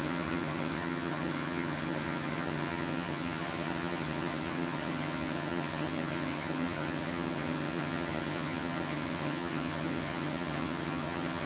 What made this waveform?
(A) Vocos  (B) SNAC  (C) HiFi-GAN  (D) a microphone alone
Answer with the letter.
C